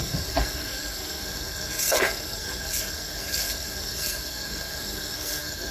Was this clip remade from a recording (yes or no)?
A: yes